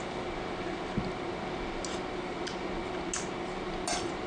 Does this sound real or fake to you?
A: real